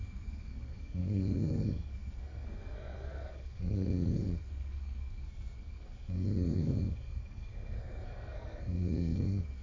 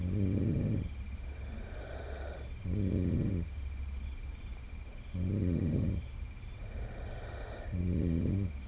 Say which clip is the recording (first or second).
second